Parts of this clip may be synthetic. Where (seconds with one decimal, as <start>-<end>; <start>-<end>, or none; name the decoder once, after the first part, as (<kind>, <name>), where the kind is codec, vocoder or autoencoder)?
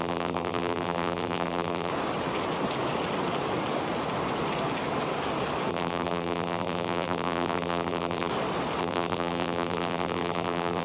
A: 0.0-1.9 (vocoder, BigVGAN v2); 5.7-8.3; 8.8-10.8